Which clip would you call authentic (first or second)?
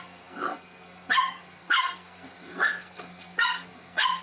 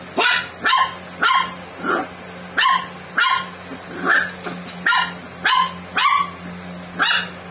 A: second